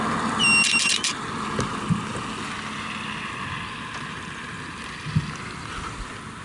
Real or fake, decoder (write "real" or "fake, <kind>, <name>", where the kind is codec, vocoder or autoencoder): real